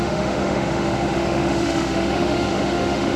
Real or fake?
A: fake